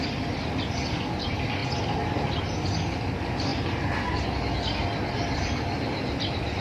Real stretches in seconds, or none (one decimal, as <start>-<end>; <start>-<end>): 0.0-3.5; 4.5-6.6